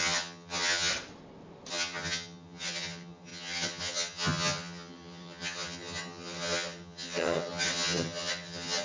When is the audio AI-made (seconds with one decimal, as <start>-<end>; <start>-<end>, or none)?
0.0-0.9; 1.7-8.8